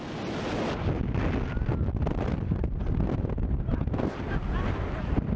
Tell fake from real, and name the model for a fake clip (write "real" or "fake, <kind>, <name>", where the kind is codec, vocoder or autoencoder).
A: real